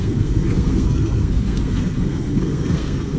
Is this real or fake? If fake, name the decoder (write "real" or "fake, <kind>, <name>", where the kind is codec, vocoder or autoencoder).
fake, codec, SNAC